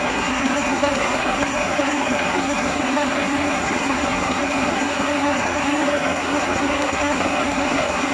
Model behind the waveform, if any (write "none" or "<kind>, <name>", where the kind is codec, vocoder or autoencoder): codec, SNAC